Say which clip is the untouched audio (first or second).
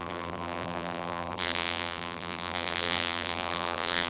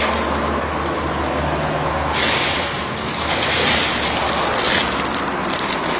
second